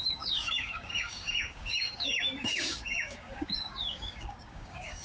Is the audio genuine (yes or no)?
no